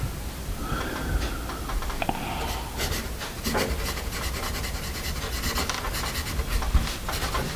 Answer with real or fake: real